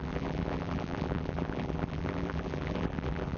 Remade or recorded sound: remade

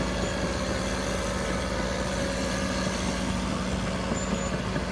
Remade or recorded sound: recorded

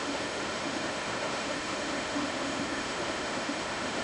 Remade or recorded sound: remade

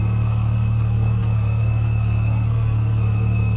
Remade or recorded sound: remade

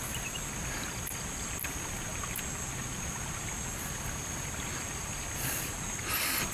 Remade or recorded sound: recorded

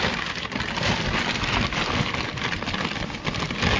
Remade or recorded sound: recorded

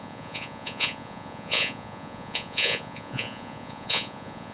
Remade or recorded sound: remade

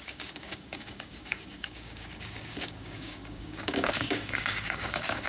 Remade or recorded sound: remade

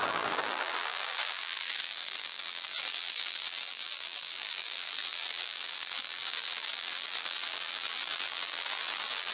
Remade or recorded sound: remade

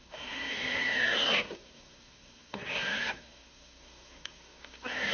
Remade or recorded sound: remade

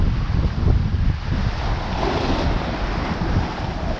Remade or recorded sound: recorded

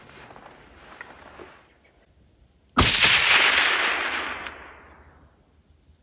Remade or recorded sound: recorded